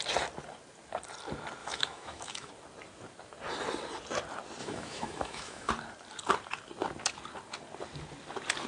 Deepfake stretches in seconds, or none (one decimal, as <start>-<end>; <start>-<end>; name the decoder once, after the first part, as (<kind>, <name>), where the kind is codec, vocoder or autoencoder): 1.6-2.5 (autoencoder, DAC-VAE); 4.6-5.7